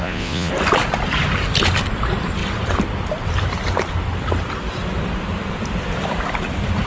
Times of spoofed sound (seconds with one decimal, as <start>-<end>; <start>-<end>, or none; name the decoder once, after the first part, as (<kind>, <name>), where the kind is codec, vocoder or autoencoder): 0.0-0.5 (vocoder, Vocos)